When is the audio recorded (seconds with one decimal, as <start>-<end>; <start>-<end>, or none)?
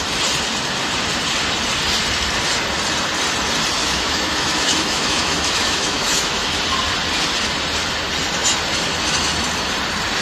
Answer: 0.0-3.8; 6.6-10.2